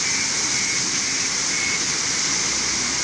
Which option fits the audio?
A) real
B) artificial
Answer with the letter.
A